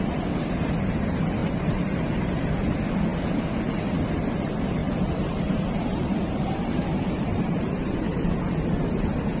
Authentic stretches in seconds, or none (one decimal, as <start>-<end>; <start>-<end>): 0.0-1.4; 2.5-4.8; 8.3-9.4